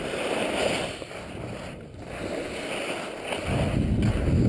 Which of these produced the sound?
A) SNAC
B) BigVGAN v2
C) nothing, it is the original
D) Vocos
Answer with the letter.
C